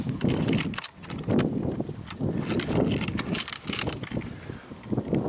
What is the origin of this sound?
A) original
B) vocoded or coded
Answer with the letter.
A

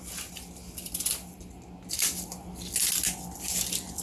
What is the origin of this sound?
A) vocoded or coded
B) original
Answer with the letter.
B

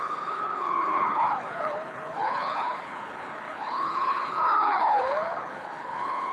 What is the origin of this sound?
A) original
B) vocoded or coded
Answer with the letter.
B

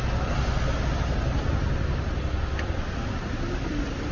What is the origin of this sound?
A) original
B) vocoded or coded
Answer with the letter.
A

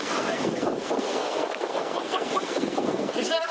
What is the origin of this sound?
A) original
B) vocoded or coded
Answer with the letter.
B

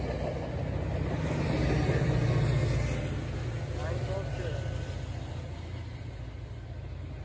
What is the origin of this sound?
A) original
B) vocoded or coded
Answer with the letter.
A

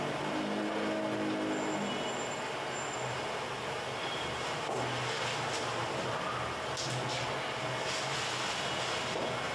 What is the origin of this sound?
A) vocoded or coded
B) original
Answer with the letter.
B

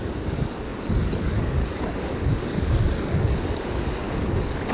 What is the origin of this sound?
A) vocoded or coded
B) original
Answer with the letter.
A